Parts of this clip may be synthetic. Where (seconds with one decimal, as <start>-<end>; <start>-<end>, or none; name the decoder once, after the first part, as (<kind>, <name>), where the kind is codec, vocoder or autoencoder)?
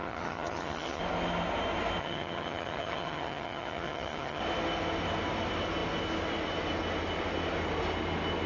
0.0-1.0 (vocoder, HiFi-GAN); 2.0-4.4